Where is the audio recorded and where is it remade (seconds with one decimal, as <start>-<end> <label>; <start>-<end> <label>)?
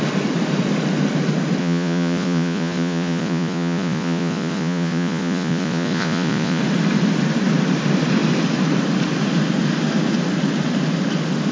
0.0-1.6 recorded; 1.6-6.6 remade; 6.6-11.5 recorded